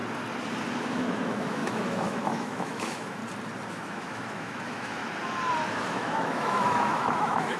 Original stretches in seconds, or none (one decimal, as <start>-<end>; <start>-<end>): 0.0-0.8; 3.2-3.7; 5.0-5.7

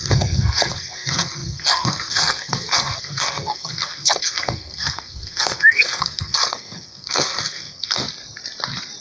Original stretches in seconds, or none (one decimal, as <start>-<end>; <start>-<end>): 8.0-9.0

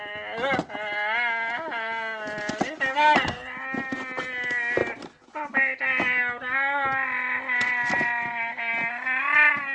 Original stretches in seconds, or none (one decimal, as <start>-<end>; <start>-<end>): 0.0-9.7

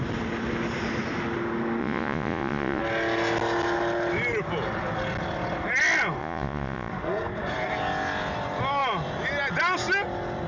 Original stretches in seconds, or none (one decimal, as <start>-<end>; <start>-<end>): 0.0-1.8; 2.8-6.2; 6.9-10.5

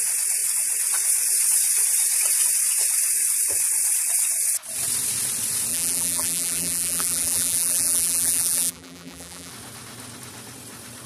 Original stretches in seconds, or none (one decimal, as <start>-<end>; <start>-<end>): 0.0-5.7; 9.5-11.1

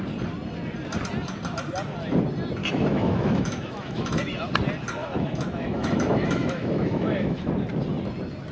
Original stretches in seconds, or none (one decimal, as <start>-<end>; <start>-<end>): 0.0-2.6; 4.5-5.0; 7.5-8.5